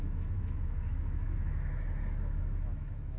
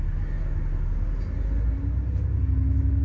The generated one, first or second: first